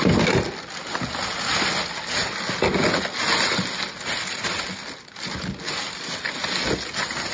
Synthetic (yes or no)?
no